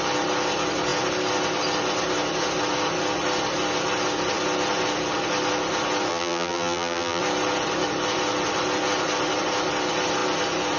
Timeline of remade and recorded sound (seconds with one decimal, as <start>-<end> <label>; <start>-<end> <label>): 0.0-6.1 recorded; 6.1-7.2 remade; 7.2-10.8 recorded